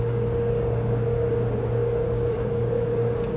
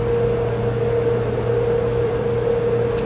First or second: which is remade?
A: first